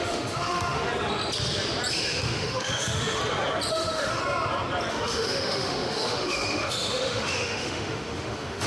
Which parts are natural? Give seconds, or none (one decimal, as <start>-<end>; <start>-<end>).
0.9-1.9; 3.2-3.7; 4.2-4.9